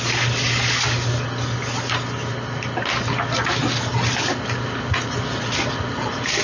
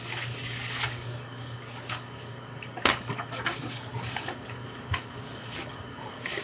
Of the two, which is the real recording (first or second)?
first